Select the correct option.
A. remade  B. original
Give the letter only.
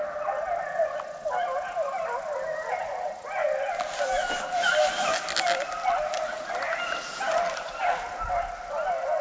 B